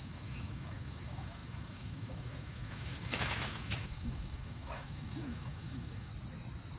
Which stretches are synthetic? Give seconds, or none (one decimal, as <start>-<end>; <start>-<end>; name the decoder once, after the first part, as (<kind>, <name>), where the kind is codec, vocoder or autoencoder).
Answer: 0.0-6.1 (autoencoder, DAC-VAE)